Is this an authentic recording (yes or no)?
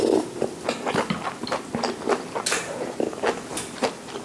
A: yes